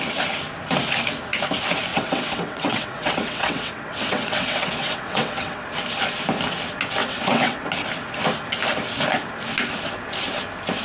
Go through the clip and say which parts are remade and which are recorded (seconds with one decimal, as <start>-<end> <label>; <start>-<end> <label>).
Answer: 0.0-1.9 recorded; 1.9-5.7 remade; 5.7-7.0 recorded; 7.0-7.7 remade; 7.7-10.8 recorded